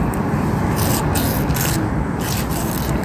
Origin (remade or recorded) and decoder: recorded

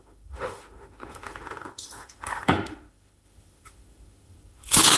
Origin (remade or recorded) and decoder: remade, autoencoder, DAC-VAE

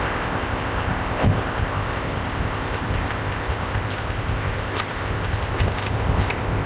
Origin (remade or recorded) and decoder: remade, codec, ZipCodec